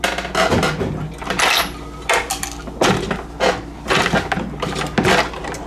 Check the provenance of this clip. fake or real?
real